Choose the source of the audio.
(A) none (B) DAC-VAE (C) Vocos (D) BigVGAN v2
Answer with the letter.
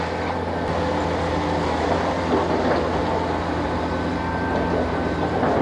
A